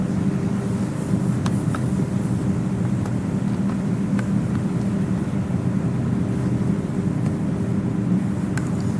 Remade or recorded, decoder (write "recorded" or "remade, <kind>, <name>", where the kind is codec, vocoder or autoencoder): recorded